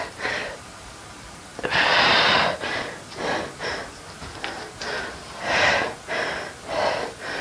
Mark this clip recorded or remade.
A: recorded